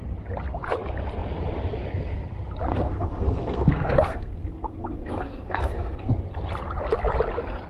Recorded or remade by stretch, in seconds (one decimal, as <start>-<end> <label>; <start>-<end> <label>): 0.0-2.7 recorded; 2.7-6.1 remade; 6.1-7.7 recorded

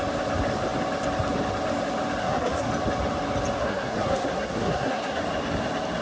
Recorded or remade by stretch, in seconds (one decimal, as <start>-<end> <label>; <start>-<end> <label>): 0.0-2.2 recorded; 2.2-2.7 remade; 2.7-3.6 recorded; 3.6-5.2 remade; 5.2-6.0 recorded

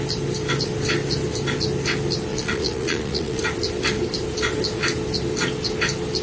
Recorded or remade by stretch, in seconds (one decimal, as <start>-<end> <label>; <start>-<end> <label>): 0.0-2.3 recorded; 2.3-3.4 remade; 3.4-6.2 recorded

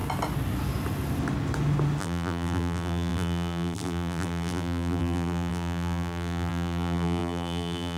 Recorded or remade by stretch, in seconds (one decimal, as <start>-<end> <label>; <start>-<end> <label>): 0.0-2.0 recorded; 2.0-8.0 remade

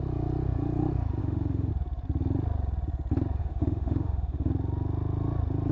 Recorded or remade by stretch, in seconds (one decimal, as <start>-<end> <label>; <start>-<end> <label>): 0.0-1.2 recorded; 1.2-1.7 remade; 1.7-3.4 recorded; 3.4-4.5 remade; 4.5-5.7 recorded